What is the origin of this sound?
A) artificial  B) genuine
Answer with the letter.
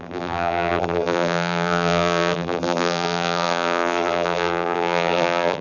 A